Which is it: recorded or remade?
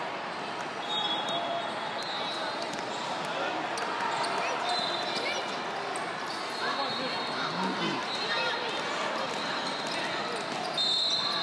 recorded